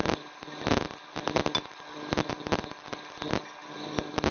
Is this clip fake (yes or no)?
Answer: no